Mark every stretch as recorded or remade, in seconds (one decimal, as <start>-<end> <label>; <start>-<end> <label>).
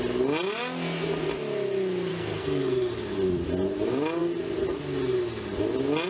0.0-2.1 recorded; 2.1-2.9 remade; 2.9-6.1 recorded